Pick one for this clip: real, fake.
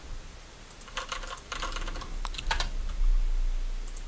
real